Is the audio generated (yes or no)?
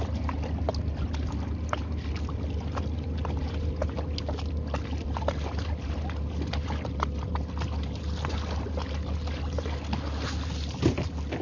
no